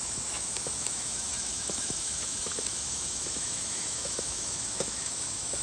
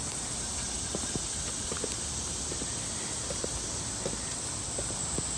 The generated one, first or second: first